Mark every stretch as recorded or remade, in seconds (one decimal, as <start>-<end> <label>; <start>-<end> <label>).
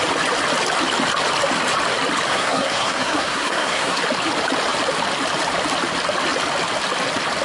0.0-2.3 recorded; 2.3-4.0 remade; 4.0-7.4 recorded